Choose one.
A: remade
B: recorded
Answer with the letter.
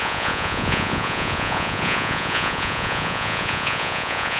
A